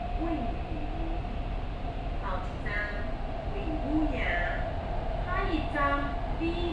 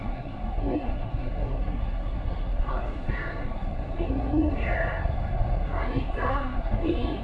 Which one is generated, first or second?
second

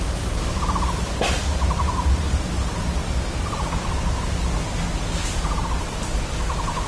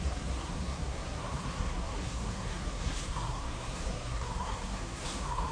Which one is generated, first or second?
second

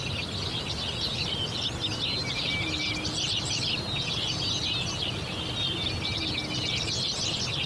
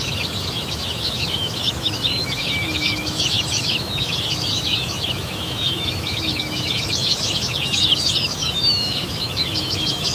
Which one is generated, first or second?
second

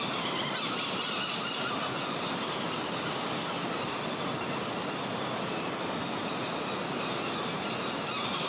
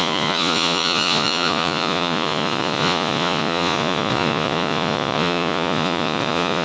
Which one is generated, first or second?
second